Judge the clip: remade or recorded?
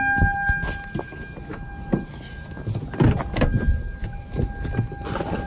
recorded